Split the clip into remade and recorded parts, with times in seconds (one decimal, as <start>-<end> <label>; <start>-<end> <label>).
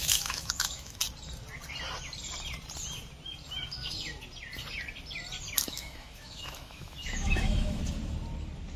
0.0-1.0 remade; 1.0-5.7 recorded; 5.7-7.8 remade; 7.8-8.8 recorded